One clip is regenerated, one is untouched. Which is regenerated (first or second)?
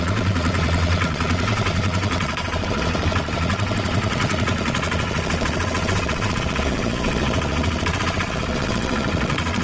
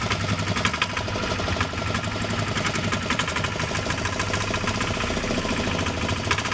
first